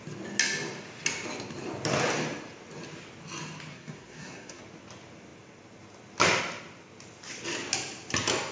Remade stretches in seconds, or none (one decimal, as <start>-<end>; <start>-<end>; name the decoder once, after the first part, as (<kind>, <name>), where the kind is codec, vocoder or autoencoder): 3.7-4.6 (codec, SNAC)